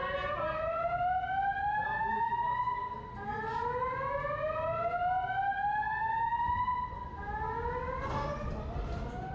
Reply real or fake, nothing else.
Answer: real